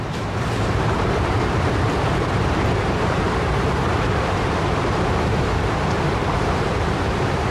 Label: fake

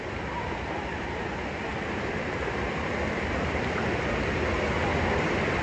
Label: real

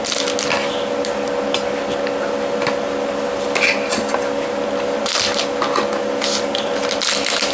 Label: real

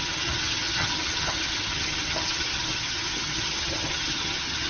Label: fake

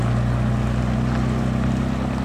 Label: real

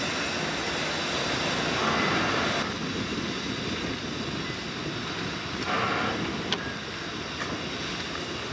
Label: real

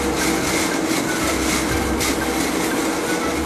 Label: real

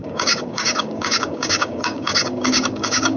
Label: fake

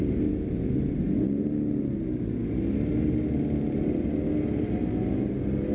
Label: real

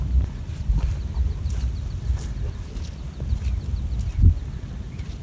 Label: real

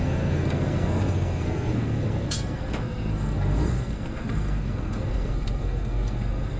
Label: fake